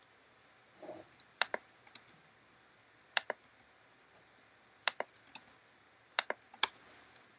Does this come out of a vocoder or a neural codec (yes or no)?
no